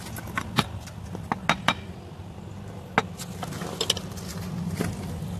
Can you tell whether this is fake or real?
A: real